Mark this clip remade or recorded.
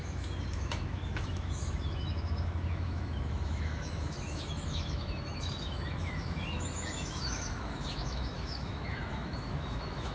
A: remade